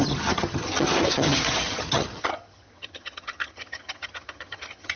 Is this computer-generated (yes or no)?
yes